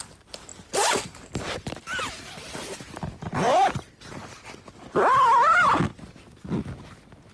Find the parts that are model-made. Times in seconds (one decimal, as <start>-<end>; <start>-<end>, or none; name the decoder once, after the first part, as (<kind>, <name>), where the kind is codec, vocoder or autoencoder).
none